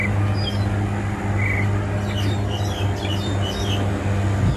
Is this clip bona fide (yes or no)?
yes